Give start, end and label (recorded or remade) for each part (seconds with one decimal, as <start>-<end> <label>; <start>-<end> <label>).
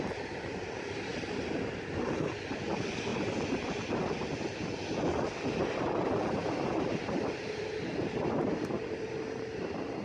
0.0-1.1 recorded; 1.1-2.3 remade; 2.3-10.0 recorded